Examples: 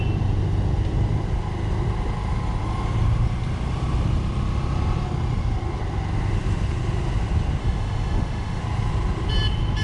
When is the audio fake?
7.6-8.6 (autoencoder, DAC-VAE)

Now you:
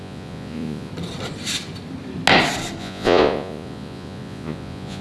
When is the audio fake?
0.0-0.9 (vocoder, Vocos); 2.8-5.0